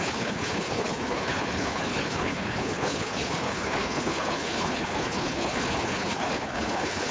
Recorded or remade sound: remade